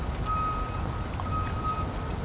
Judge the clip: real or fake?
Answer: real